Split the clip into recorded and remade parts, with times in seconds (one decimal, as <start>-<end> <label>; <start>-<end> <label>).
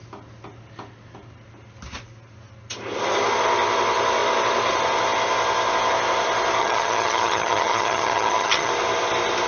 0.0-6.6 recorded; 6.6-8.7 remade; 8.7-9.5 recorded